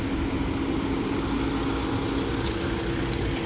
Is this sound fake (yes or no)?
no